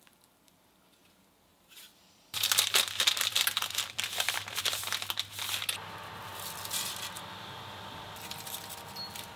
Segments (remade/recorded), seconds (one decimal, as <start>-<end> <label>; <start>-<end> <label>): 0.0-1.0 recorded; 1.0-4.8 remade; 4.8-9.4 recorded